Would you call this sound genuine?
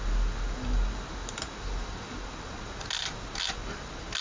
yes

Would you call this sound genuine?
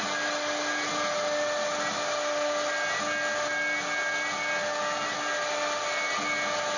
yes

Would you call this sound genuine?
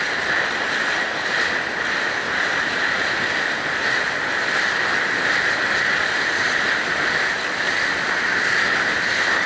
yes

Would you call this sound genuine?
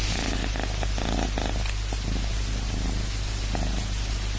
yes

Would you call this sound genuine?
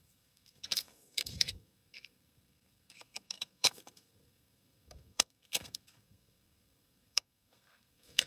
no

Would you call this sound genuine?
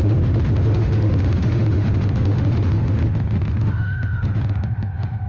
no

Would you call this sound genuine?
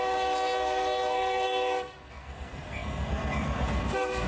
no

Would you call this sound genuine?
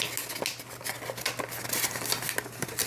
yes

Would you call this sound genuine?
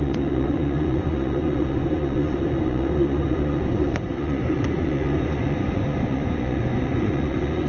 no